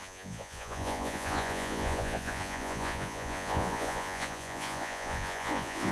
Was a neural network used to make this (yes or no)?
yes